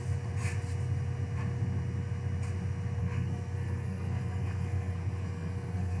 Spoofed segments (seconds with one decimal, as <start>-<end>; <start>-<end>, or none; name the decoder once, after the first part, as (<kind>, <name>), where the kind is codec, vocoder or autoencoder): 3.0-6.0 (codec, SNAC)